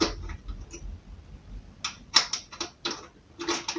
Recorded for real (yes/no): yes